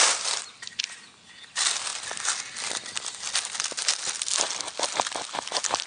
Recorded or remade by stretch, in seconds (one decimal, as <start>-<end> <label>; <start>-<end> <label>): 0.0-5.9 recorded